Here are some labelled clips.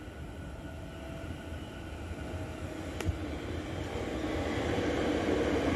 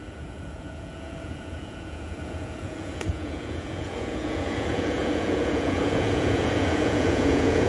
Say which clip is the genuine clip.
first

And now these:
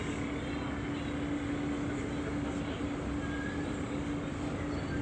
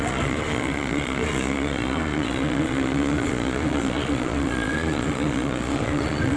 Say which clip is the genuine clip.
first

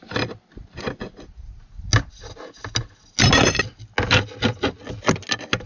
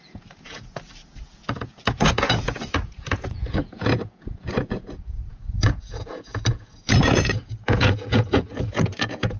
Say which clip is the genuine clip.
first